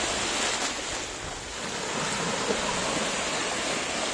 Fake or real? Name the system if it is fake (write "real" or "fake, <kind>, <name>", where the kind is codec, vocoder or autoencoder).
real